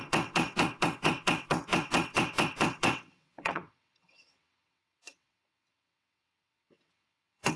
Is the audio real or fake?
fake